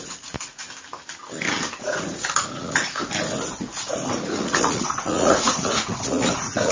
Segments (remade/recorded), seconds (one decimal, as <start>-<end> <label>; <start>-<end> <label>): 0.0-0.6 remade; 0.6-1.8 recorded; 1.8-3.0 remade; 3.0-3.6 recorded; 3.6-6.7 remade